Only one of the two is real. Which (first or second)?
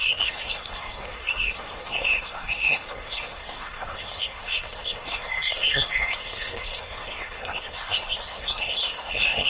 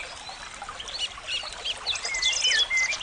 second